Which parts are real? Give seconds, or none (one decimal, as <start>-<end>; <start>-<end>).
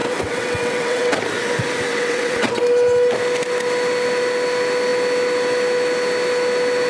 1.2-1.9; 2.6-6.9